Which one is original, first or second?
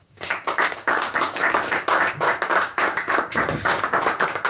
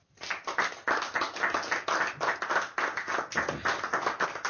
second